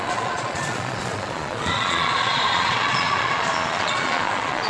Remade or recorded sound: remade